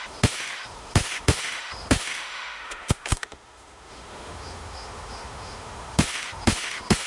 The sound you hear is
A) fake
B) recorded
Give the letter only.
A